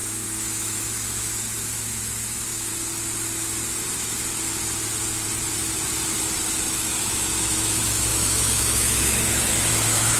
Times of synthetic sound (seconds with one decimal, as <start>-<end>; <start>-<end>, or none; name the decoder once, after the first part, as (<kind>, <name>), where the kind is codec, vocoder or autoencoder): 0.0-2.7 (autoencoder, DAC-VAE); 6.5-10.2